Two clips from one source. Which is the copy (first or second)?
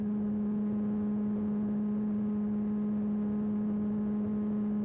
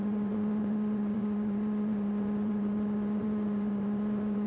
second